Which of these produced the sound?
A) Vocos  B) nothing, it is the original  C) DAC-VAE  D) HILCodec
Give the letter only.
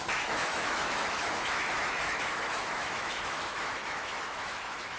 C